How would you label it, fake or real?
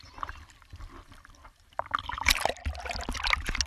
real